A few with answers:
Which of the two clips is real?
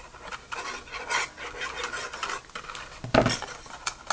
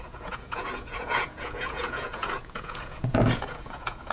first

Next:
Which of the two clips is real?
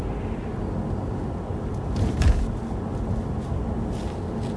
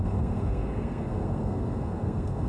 first